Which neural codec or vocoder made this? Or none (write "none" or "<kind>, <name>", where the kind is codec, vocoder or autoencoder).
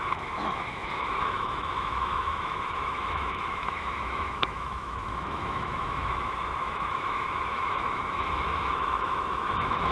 autoencoder, DAC-VAE